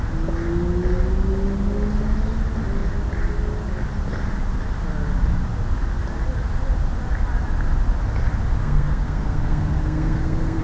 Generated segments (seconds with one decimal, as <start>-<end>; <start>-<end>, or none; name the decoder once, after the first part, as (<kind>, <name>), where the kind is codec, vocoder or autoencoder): 8.6-10.6 (codec, SNAC)